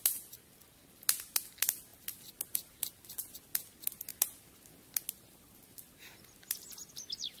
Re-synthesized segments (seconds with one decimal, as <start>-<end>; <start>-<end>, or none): none